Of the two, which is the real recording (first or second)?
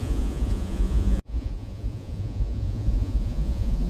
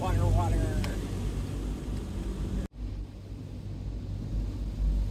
second